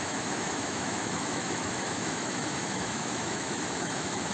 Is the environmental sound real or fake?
fake